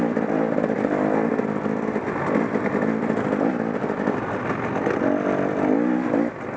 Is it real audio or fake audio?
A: real